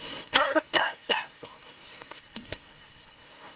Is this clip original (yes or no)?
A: no